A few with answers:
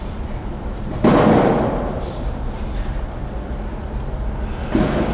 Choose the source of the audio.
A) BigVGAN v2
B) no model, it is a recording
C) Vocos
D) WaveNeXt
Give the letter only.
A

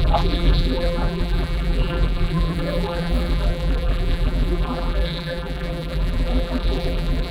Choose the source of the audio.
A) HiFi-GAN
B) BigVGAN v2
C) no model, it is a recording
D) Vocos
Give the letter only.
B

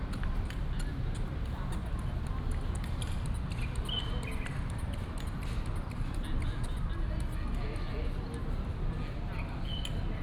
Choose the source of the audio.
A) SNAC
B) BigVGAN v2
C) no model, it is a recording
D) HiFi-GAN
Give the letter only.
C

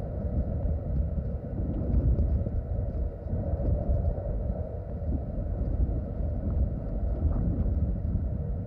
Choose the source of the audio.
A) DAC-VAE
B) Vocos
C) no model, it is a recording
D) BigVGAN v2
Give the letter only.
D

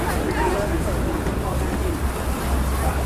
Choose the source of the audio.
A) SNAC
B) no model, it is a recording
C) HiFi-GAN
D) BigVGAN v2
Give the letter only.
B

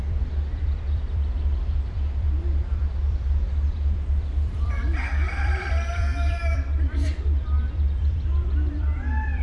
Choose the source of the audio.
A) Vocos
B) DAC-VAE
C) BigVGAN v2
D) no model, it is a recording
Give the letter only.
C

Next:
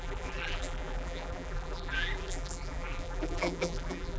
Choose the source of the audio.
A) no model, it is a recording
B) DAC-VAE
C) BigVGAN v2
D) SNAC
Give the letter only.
C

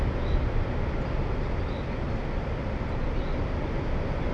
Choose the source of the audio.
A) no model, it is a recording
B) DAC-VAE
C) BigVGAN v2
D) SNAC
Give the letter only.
A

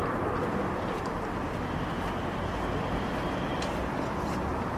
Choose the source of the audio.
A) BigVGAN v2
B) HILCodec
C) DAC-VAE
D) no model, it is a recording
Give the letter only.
D